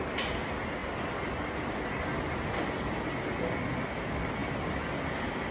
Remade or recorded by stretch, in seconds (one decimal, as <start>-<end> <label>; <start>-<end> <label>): 0.0-5.5 recorded